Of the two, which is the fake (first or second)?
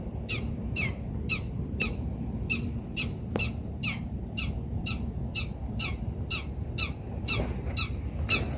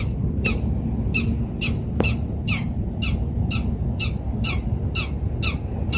first